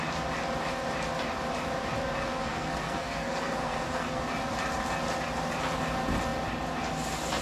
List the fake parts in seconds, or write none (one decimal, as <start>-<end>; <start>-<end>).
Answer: 2.3-4.2